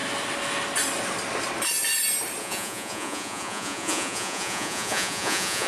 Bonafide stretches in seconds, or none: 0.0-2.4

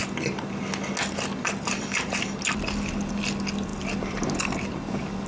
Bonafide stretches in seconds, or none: 0.0-5.3

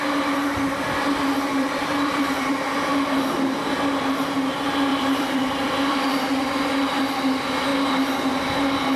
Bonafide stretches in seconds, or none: 0.0-1.5; 2.9-4.9; 7.1-9.0

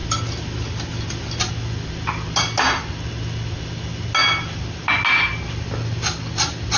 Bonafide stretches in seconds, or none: 0.0-6.8

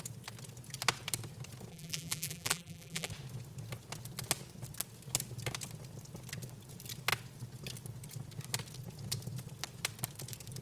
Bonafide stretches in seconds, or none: 0.0-1.7; 3.1-10.6

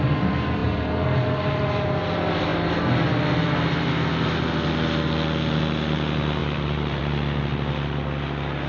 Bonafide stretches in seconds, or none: 0.0-6.4; 7.0-8.7